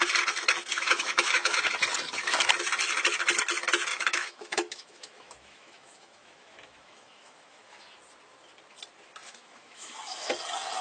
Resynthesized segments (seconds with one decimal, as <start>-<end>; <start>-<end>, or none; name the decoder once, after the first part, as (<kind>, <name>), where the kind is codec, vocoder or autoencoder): 0.7-1.6 (autoencoder, DAC-VAE); 3.9-7.8; 9.3-10.3